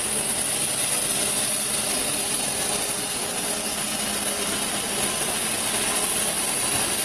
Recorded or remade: recorded